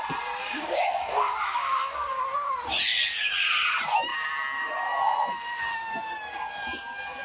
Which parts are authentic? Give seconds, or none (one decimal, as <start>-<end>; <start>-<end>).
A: 0.0-0.4; 2.1-7.2